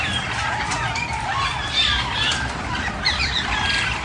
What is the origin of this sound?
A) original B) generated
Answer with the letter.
B